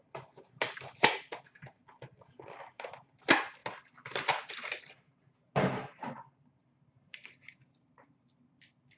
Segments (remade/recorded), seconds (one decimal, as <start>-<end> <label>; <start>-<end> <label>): 0.0-9.0 recorded